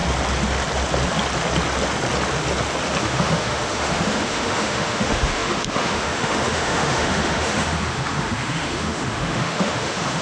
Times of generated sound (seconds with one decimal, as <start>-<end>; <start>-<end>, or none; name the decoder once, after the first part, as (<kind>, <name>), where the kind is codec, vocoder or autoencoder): 3.0-10.2 (autoencoder, DAC-VAE)